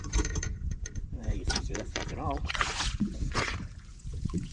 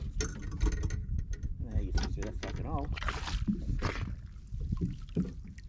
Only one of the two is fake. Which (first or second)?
first